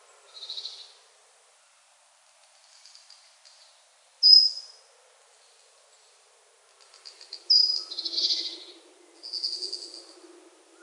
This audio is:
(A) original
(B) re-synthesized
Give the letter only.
A